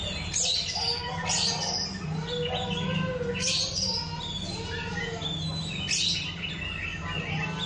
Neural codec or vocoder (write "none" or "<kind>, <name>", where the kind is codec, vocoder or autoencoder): none